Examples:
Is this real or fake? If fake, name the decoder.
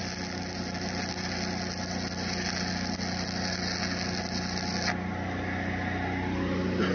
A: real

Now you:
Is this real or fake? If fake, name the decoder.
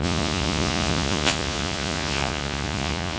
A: fake, vocoder, Vocos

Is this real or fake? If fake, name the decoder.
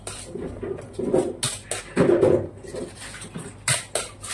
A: real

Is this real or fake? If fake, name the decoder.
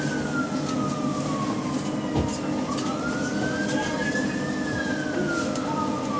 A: real